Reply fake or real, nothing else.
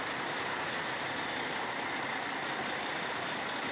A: real